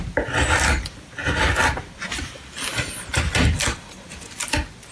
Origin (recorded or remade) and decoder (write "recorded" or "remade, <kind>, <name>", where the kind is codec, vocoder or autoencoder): recorded